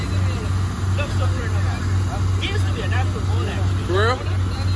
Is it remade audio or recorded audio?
recorded